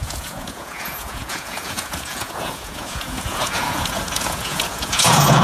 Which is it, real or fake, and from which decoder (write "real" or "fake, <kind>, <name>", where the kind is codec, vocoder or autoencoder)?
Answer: fake, vocoder, Vocos